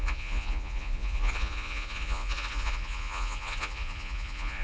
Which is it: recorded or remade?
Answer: remade